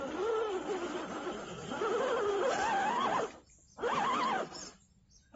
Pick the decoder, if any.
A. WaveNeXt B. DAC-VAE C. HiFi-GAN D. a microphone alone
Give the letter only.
D